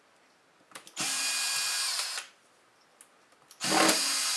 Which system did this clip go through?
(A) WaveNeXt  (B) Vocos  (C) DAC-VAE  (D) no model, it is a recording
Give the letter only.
D